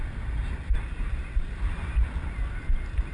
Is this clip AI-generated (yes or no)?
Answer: no